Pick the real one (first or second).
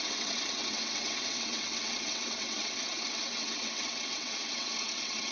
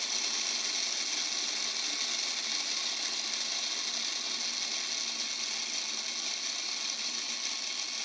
second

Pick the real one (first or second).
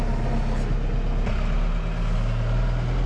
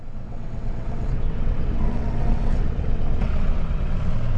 first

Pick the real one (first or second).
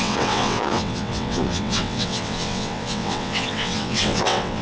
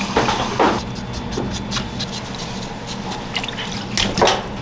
second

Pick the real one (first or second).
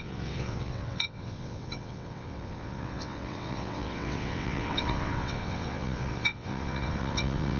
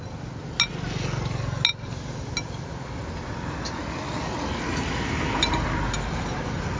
second